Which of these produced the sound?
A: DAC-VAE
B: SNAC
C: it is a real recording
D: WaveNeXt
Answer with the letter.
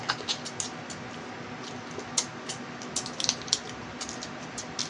C